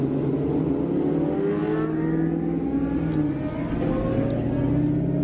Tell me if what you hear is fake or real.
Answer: real